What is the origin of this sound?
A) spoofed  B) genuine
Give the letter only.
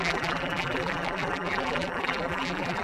A